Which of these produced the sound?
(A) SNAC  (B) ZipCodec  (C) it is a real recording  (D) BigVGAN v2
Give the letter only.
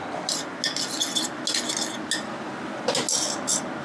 C